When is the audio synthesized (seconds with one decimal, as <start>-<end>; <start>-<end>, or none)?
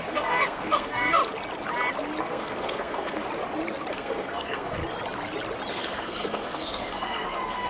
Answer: 0.0-1.2; 2.2-3.2; 3.9-4.8; 5.7-7.7